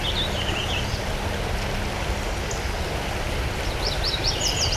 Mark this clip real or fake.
real